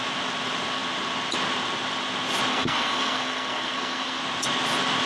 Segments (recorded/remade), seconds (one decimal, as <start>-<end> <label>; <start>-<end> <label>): 0.0-2.5 recorded; 2.5-4.2 remade; 4.2-5.1 recorded